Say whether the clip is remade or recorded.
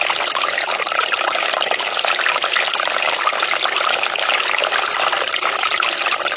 recorded